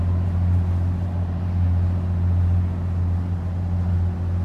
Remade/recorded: recorded